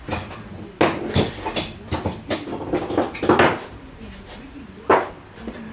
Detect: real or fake real